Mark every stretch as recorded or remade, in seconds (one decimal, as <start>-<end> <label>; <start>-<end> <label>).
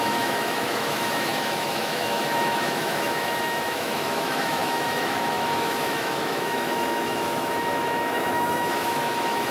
0.0-9.5 remade